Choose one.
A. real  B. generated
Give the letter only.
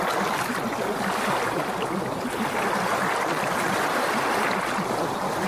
A